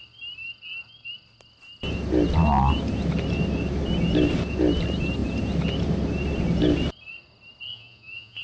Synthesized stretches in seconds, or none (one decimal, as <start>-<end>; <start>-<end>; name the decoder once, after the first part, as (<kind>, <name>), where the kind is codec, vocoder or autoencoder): 7.7-8.4 (vocoder, Vocos)